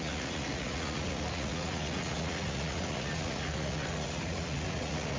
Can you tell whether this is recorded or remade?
remade